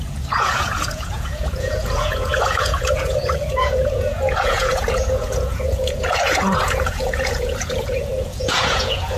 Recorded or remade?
remade